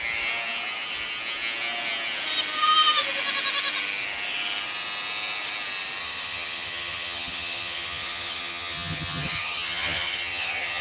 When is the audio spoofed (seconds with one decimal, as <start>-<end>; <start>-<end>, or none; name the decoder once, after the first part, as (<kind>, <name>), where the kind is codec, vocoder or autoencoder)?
6.0-10.8 (vocoder, HiFi-GAN)